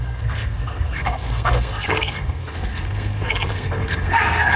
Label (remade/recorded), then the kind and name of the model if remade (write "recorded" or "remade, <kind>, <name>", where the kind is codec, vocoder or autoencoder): remade, codec, SNAC